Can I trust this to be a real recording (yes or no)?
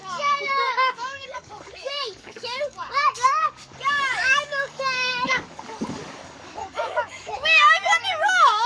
no